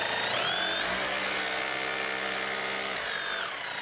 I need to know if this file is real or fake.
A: real